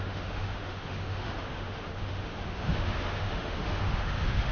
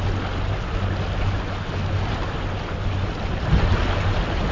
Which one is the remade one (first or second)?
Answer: first